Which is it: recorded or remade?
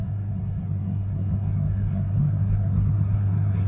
remade